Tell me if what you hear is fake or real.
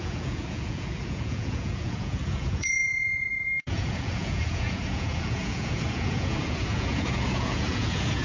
fake